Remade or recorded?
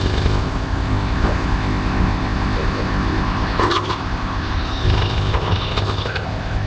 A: remade